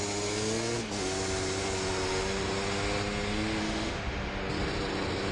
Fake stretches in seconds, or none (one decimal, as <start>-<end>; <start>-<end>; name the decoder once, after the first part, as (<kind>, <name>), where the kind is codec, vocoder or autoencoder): 3.6-4.4 (autoencoder, DAC-VAE)